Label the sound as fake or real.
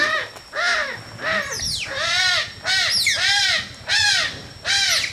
real